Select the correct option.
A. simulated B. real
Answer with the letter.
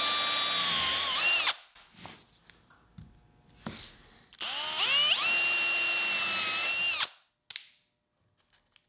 B